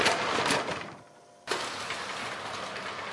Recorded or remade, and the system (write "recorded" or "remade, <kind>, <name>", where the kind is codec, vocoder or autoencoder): recorded